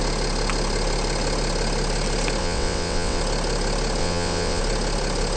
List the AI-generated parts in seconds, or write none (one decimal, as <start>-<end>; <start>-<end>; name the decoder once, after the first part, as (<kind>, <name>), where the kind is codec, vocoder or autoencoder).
2.4-3.2 (vocoder, WaveNeXt); 4.0-4.6